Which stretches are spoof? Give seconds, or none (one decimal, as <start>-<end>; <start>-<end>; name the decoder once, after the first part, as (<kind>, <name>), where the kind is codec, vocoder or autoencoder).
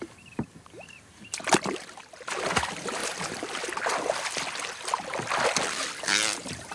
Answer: none